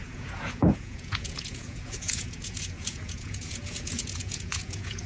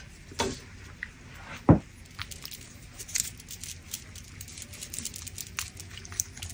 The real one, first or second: second